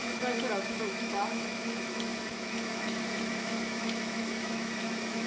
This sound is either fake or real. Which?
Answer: fake